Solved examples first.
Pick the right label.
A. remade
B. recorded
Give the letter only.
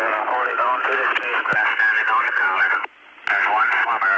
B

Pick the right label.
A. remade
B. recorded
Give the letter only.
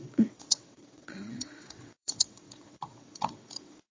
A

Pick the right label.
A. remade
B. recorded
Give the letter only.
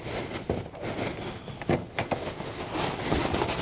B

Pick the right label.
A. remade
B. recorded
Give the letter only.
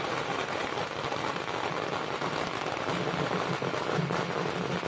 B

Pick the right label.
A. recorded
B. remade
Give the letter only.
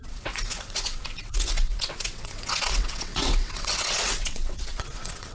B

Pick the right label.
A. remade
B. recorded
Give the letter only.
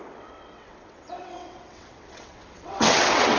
A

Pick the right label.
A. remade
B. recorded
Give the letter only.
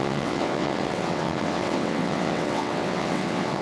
A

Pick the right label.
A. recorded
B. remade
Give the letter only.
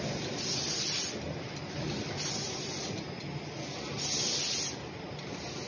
A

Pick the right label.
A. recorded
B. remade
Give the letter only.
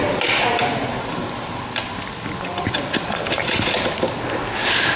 A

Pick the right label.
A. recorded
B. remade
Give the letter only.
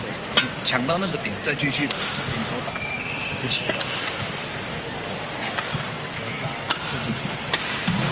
A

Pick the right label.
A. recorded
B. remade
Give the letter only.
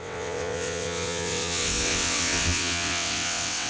B